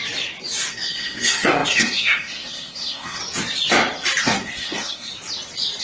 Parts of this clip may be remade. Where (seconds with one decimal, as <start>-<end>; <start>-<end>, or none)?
0.7-3.2; 4.2-5.1